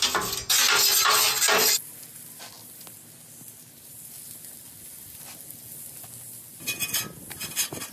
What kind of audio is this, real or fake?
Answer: real